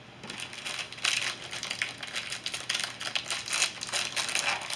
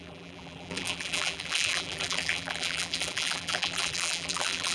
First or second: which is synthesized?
second